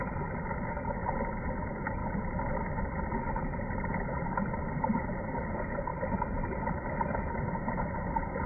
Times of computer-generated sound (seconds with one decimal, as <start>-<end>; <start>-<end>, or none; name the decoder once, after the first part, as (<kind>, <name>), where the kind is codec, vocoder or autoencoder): 1.0-1.5 (vocoder, BigVGAN v2); 2.0-3.9; 5.9-7.3